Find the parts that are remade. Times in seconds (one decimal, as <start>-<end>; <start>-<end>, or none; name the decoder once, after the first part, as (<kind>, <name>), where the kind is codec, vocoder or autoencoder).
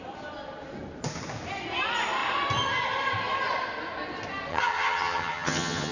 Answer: 4.5-5.9 (vocoder, HiFi-GAN)